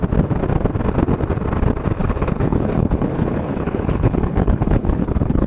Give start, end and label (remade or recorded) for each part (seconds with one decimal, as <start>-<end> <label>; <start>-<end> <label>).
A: 0.0-2.0 recorded; 2.0-5.5 remade